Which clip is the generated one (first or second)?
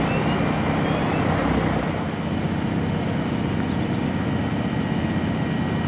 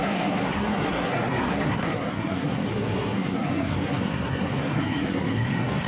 second